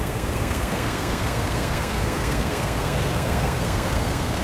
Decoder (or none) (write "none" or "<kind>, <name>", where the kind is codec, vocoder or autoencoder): codec, SNAC